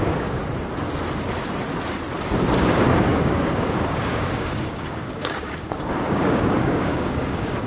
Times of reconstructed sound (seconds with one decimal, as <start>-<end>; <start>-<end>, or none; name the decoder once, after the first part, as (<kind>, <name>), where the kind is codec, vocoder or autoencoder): 0.0-0.4 (codec, DAC); 2.6-7.7